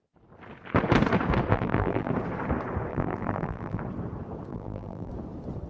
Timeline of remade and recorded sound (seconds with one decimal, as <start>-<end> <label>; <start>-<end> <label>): 0.0-1.5 recorded; 1.5-2.1 remade; 2.1-2.9 recorded; 2.9-3.8 remade; 3.8-4.5 recorded; 4.5-5.1 remade; 5.1-5.7 recorded